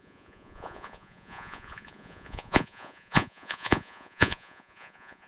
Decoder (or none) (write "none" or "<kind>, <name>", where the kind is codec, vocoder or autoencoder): vocoder, Vocos